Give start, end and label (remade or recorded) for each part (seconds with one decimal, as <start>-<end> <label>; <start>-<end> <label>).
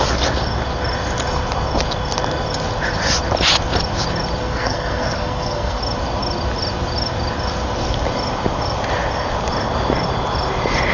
0.0-4.4 recorded; 4.4-5.8 remade; 5.8-10.9 recorded